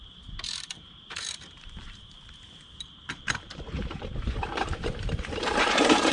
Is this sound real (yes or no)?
no